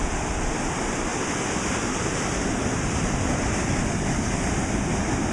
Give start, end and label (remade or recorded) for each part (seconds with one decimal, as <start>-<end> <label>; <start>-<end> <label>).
0.0-5.3 recorded